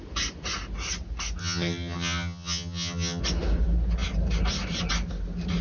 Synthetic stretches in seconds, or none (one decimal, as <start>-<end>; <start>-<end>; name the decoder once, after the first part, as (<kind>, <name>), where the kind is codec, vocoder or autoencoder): 1.4-3.2 (vocoder, HiFi-GAN)